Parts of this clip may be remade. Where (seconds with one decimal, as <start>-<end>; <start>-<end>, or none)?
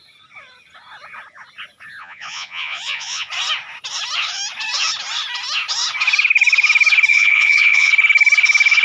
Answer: 2.0-3.3; 7.1-7.9